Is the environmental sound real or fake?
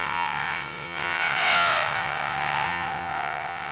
fake